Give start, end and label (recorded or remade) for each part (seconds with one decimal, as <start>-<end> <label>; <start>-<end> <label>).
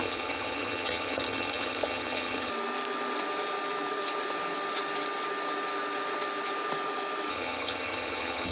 0.0-2.5 remade; 2.5-7.3 recorded; 7.3-8.5 remade